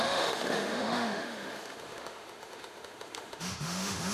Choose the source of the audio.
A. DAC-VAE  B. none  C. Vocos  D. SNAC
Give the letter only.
A